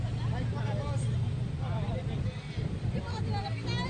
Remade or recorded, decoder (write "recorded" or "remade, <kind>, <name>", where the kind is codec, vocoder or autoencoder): recorded